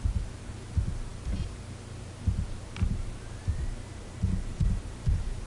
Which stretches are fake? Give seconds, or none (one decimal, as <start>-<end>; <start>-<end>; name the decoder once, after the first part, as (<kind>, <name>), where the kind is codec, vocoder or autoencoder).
none